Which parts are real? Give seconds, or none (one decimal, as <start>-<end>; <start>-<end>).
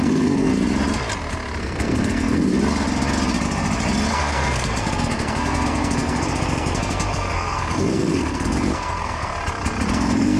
0.5-1.6; 2.5-4.1; 9.3-9.9